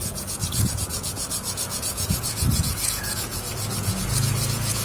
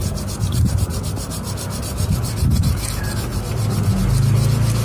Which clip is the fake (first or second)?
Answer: first